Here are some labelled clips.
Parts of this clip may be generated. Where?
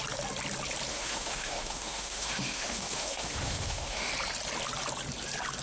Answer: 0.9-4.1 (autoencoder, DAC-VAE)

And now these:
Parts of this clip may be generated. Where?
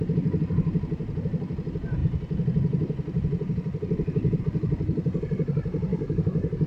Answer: 5.9-6.7 (codec, DAC)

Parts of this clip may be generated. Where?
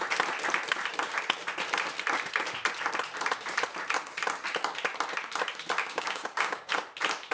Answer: 5.8-6.7 (codec, DAC)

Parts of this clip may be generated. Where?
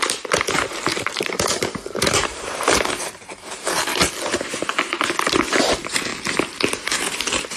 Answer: 0.9-4.0 (vocoder, BigVGAN v2)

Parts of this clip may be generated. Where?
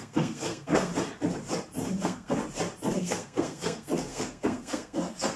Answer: 0.0-0.9 (codec, SNAC); 2.0-2.4; 3.0-5.4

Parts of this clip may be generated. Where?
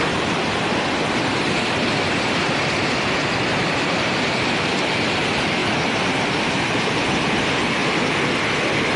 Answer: 0.0-7.8 (vocoder, BigVGAN v2); 8.4-9.0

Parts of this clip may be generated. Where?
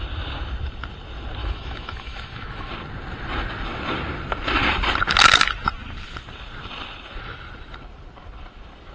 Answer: 1.4-2.7 (autoencoder, DAC-VAE)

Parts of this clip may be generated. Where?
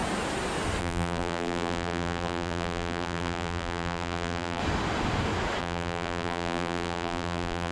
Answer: 0.8-4.6 (vocoder, BigVGAN v2); 5.6-7.7